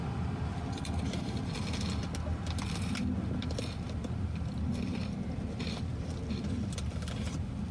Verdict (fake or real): real